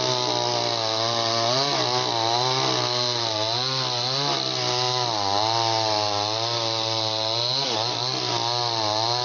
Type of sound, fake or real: real